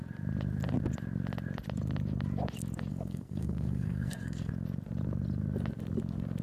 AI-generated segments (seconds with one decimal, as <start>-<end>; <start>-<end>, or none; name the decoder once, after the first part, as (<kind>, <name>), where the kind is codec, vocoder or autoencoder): 2.9-4.5 (codec, SNAC)